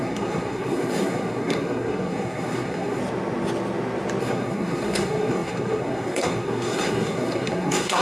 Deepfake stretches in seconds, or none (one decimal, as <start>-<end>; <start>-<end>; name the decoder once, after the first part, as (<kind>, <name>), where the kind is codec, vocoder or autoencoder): 0.0-3.0 (codec, SNAC); 4.2-8.0

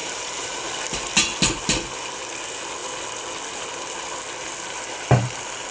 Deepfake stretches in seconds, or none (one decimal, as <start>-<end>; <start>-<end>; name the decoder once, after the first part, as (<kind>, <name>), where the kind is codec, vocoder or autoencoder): 0.0-0.7 (vocoder, BigVGAN v2)

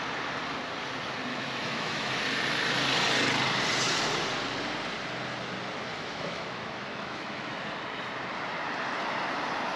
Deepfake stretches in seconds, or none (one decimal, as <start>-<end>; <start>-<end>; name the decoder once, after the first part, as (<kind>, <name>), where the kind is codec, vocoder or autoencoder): 1.3-2.1 (autoencoder, DAC-VAE); 5.9-7.6

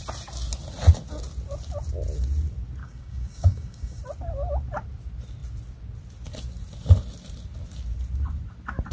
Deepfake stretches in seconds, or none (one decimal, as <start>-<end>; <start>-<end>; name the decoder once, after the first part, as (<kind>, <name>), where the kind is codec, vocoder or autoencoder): 2.8-4.0 (codec, DAC)

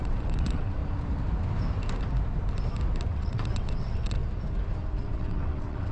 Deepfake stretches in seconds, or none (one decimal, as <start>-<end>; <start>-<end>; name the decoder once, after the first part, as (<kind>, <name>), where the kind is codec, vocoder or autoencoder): 0.0-0.8 (vocoder, WaveNeXt); 3.1-4.2; 5.0-5.9

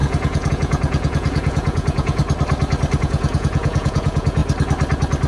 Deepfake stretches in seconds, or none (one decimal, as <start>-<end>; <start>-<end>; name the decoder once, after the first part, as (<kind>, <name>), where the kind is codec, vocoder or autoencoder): 0.0-2.2 (vocoder, Vocos); 3.0-4.4